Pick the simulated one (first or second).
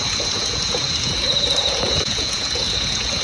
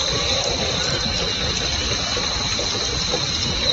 first